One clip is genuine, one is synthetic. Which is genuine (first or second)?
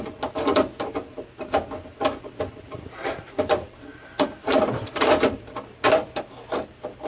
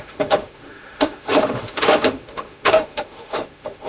first